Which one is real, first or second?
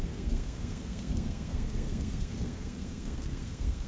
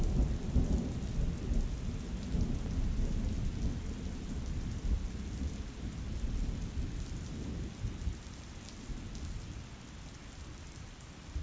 second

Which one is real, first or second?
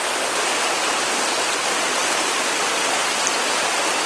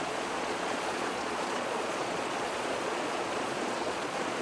first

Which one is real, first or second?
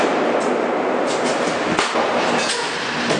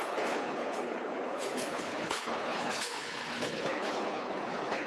first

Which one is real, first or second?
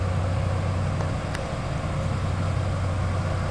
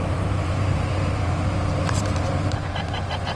first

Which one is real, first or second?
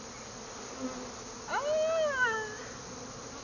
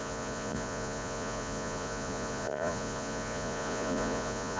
first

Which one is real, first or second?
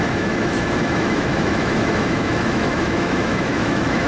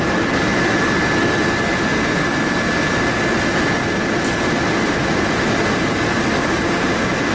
second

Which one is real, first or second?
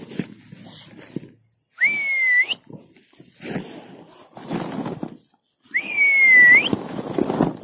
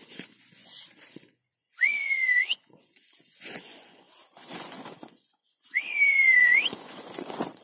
first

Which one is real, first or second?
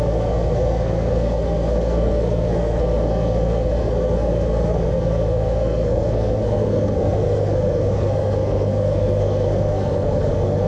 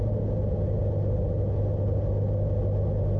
second